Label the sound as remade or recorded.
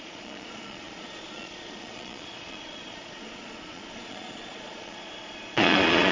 remade